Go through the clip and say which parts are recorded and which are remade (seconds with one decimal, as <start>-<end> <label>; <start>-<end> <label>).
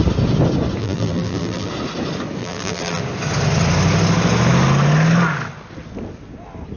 0.0-0.8 recorded; 0.8-1.7 remade; 1.7-2.4 recorded; 2.4-3.0 remade; 3.0-6.8 recorded